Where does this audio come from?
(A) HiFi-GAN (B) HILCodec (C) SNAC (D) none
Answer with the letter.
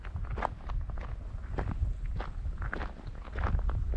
D